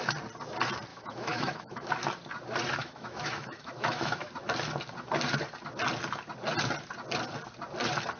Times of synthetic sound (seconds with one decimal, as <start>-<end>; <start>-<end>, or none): 0.9-1.9; 2.8-4.3